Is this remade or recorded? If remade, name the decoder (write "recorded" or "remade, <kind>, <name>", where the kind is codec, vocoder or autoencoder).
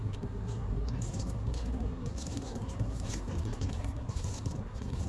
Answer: remade, codec, SNAC